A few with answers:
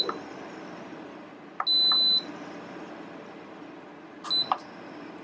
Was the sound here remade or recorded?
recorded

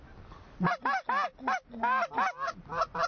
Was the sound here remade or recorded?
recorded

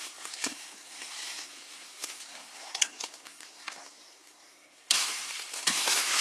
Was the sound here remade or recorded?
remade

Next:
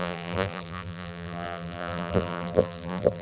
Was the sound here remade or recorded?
remade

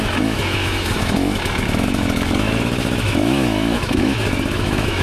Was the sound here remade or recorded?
remade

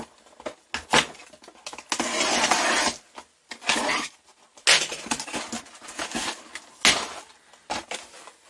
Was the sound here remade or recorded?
recorded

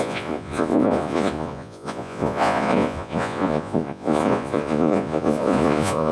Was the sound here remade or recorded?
remade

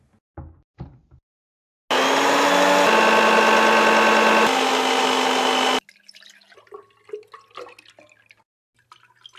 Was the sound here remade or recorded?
recorded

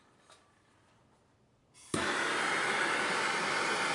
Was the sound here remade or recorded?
recorded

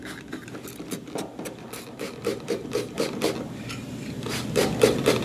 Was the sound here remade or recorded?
recorded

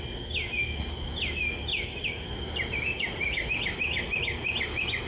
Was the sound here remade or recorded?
recorded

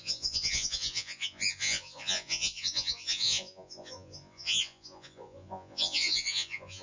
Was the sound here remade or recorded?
remade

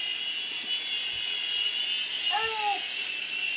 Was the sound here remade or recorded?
recorded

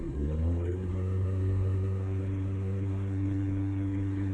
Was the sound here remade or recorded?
remade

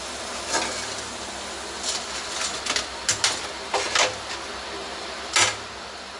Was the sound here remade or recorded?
recorded